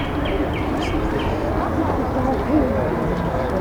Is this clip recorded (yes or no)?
yes